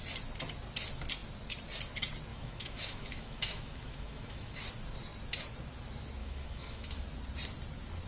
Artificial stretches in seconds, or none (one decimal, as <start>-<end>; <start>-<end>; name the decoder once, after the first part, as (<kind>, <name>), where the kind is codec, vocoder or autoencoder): 2.3-4.6 (autoencoder, DAC-VAE); 6.2-7.0